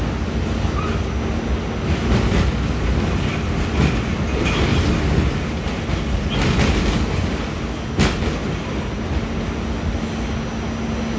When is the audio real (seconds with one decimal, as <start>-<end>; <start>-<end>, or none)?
0.0-11.2